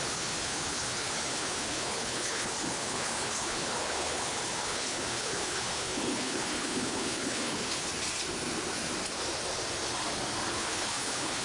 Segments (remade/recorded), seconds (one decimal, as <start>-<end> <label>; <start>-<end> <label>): 0.0-7.9 remade; 7.9-10.5 recorded; 10.5-11.4 remade